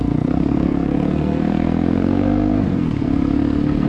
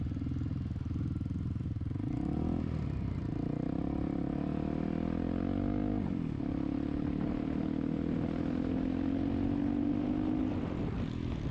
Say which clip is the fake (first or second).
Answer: first